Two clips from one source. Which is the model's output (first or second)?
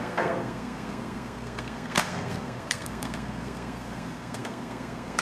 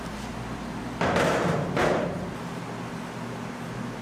first